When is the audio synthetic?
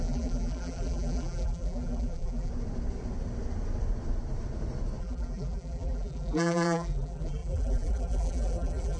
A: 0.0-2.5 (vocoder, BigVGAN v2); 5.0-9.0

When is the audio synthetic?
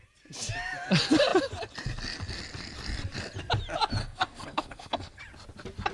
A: 4.0-5.2 (codec, SNAC)